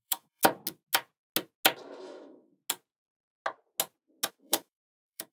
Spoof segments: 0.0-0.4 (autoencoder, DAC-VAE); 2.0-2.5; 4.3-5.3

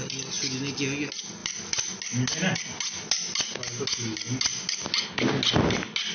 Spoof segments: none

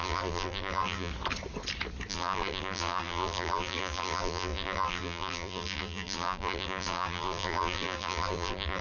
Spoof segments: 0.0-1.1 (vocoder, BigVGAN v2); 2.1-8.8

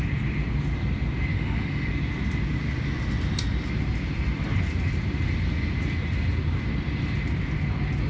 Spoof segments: 1.3-1.9 (autoencoder, DAC-VAE)

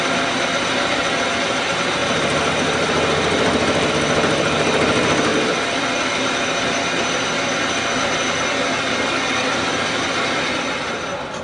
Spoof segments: none

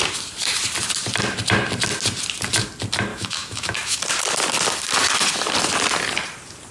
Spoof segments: 3.1-4.0 (autoencoder, DAC-VAE)

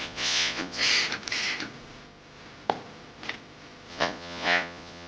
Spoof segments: 0.0-0.8 (vocoder, Vocos); 3.9-5.1

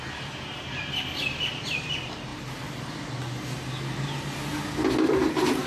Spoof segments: none